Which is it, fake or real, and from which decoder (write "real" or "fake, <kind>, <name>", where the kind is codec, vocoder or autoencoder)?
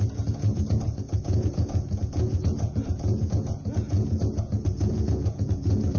fake, vocoder, Vocos